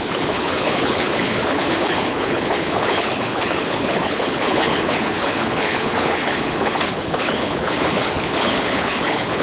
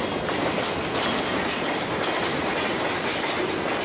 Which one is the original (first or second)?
second